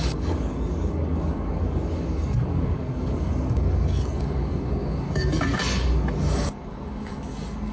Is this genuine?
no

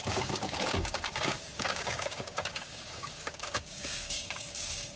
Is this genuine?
no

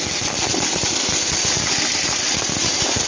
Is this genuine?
yes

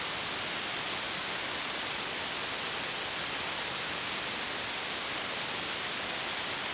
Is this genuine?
yes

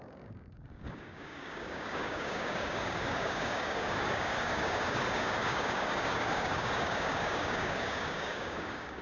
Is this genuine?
no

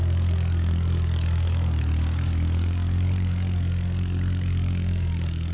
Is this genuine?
no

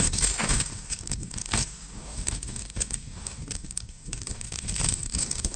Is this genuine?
no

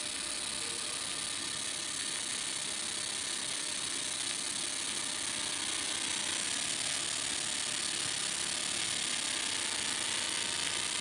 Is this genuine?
yes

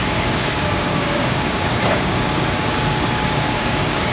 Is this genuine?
no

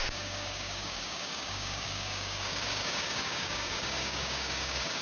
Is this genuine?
no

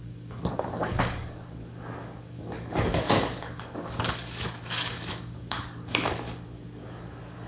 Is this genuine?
no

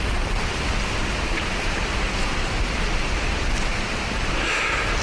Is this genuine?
yes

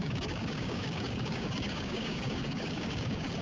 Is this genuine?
no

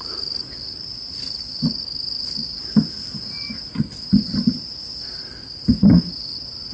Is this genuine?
yes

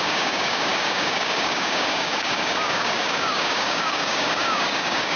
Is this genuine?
no